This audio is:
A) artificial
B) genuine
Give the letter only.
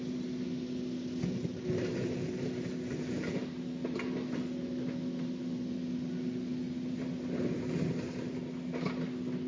B